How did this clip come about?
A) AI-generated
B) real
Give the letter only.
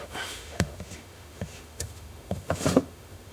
A